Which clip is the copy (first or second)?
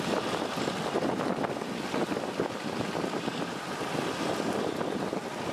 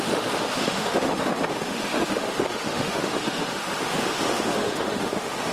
second